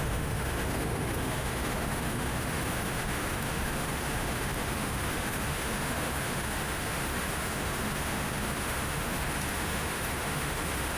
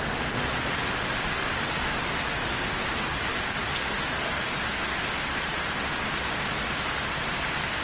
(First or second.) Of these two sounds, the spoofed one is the first